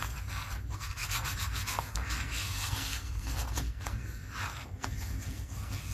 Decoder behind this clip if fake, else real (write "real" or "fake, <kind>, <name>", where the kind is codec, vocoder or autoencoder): fake, codec, SNAC